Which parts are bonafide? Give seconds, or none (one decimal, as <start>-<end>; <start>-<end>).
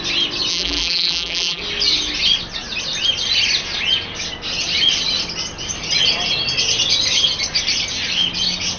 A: 0.0-0.5; 1.6-8.8